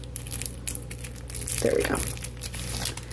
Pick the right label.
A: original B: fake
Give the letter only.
A